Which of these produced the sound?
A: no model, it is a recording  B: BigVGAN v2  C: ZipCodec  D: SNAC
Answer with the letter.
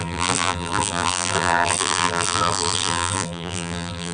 B